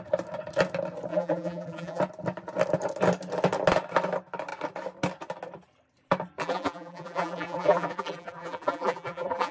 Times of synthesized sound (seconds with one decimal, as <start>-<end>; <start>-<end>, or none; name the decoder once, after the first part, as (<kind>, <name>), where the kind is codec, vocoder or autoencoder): 1.1-2.0 (vocoder, BigVGAN v2); 6.4-9.5